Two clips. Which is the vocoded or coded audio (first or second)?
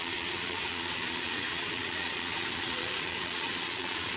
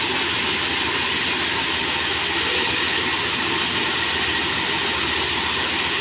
first